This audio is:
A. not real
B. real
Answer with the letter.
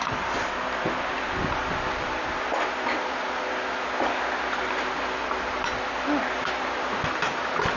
B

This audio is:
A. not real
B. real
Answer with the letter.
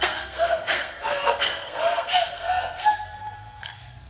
A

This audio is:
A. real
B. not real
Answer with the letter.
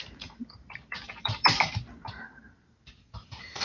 B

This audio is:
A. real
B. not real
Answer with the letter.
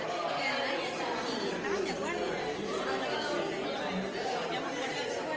A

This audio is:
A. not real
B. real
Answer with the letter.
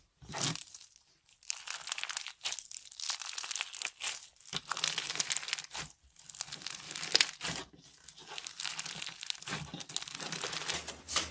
B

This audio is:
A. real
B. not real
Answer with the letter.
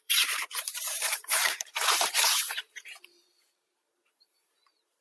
B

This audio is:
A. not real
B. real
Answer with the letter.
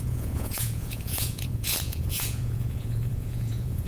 A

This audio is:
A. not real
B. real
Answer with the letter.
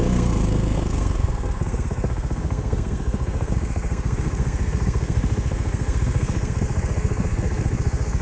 A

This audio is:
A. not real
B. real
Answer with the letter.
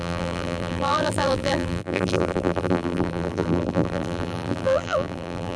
A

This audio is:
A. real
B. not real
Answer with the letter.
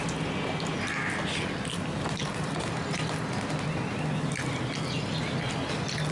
A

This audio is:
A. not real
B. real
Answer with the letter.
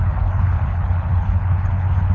A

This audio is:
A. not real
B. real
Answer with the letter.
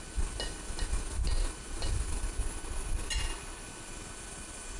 B